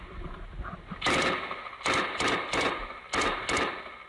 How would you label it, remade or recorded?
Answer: recorded